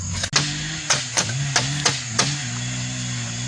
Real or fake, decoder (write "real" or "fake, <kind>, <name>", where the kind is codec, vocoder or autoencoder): real